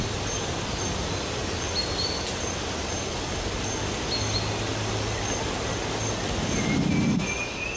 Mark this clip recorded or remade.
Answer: recorded